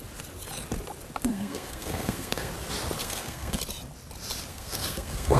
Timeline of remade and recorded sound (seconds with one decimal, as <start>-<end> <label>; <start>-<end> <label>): 0.0-1.3 recorded; 1.3-2.5 remade; 2.5-3.0 recorded; 3.0-3.6 remade; 3.6-4.5 recorded; 4.5-5.4 remade